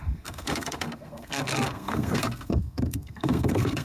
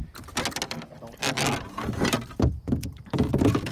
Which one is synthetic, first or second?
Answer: first